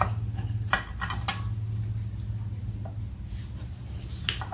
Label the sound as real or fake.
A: real